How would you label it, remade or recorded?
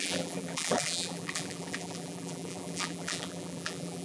remade